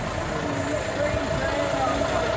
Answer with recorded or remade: recorded